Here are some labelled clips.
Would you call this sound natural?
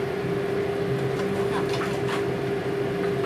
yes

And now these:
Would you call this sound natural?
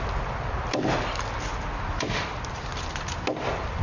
yes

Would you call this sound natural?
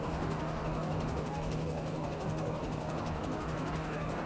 no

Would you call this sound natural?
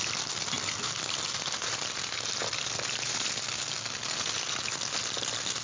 yes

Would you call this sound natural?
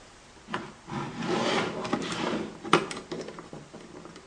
yes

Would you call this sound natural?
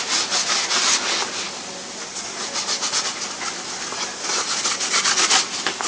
yes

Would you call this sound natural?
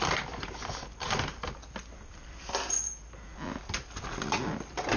yes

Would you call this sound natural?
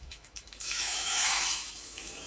no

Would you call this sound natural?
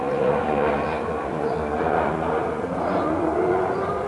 no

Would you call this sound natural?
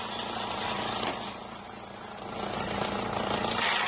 yes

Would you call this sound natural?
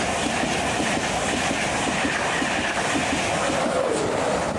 yes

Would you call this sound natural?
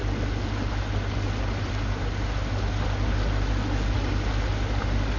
yes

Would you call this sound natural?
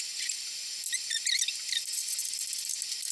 yes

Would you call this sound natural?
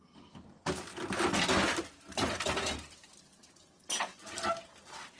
yes